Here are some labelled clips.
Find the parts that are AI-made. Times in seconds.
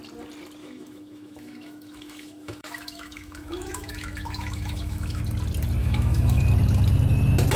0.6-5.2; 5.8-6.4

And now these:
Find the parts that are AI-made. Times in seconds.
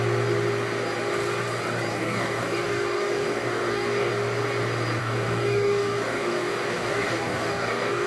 1.9-4.1; 5.0-8.1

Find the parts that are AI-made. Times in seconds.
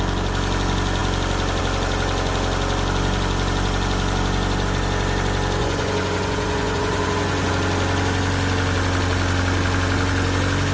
5.6-7.5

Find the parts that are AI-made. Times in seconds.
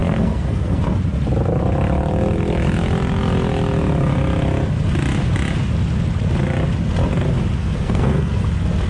0.0-0.8; 7.6-8.4